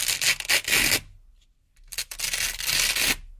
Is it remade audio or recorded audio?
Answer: recorded